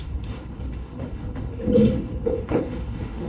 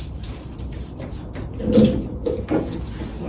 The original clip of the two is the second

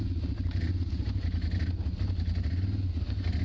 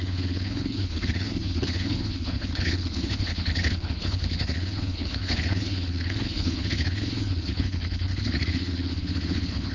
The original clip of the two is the first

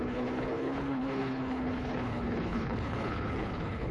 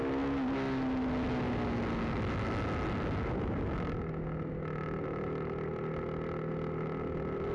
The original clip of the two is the second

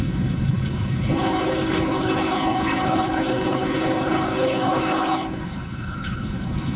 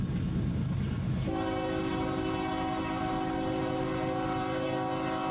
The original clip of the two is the second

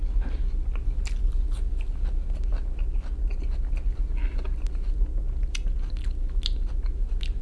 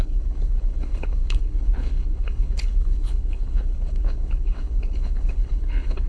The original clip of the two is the first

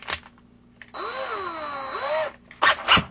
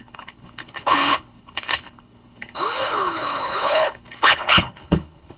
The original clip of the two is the first